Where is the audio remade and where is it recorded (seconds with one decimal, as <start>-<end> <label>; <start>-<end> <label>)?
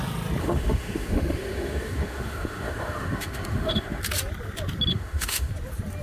0.0-0.4 recorded; 0.4-4.0 remade; 4.0-4.9 recorded; 4.9-5.5 remade; 5.5-6.0 recorded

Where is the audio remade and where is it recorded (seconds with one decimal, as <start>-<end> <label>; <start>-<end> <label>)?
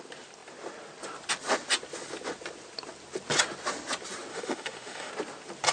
0.0-4.3 recorded; 4.3-5.1 remade; 5.1-5.7 recorded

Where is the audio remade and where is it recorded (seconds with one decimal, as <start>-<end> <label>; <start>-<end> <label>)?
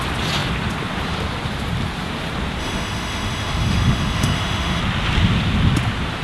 0.0-2.6 recorded; 2.6-4.8 remade; 4.8-6.2 recorded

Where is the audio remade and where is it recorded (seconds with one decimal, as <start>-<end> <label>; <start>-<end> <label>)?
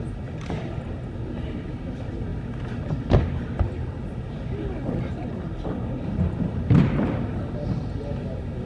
0.0-8.7 recorded